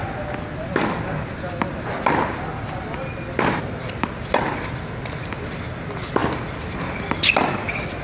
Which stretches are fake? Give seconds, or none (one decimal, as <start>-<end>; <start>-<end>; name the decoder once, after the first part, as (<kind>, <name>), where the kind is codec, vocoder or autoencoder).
none